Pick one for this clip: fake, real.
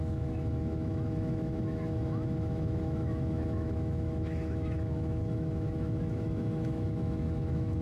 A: fake